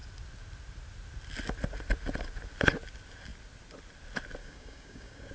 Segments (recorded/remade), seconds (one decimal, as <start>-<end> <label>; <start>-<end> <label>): 0.0-4.4 recorded; 4.4-5.3 remade